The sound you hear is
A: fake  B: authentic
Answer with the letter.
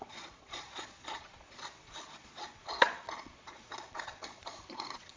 A